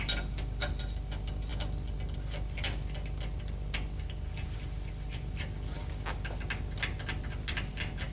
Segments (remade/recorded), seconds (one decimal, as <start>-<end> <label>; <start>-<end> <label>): 0.0-8.1 recorded